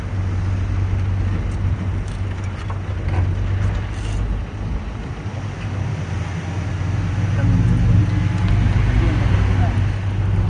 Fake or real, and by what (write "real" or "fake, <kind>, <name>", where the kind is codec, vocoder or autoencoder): real